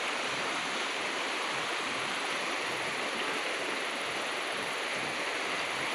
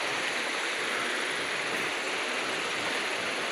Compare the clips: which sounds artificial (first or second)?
first